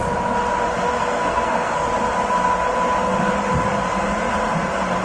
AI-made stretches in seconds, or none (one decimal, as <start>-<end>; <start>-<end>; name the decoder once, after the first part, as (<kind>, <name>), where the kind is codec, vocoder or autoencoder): 0.9-1.9 (codec, SNAC)